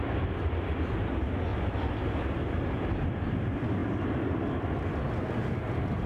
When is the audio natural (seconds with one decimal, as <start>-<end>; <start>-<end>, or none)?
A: 0.0-1.5; 2.3-6.1